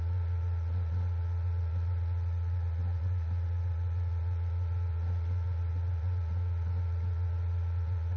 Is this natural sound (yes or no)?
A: no